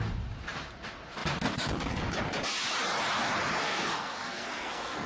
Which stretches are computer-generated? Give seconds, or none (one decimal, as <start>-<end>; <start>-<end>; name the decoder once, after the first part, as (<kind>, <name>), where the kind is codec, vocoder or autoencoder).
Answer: 3.6-5.1 (codec, SNAC)